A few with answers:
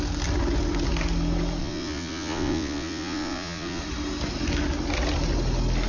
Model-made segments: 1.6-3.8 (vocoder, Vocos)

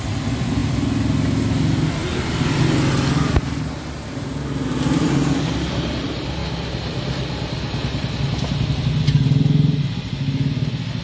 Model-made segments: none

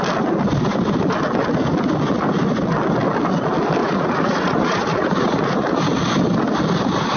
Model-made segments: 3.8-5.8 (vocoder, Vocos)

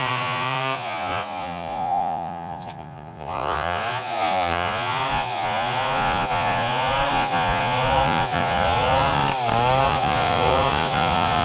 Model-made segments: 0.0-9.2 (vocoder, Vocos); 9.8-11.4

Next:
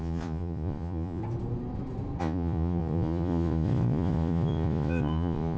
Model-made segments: 0.0-1.2 (vocoder, Vocos); 2.2-5.6

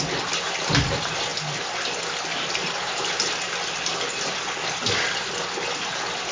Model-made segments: none

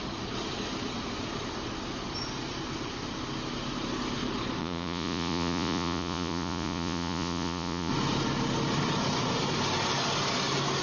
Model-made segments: 4.6-7.9 (vocoder, Vocos)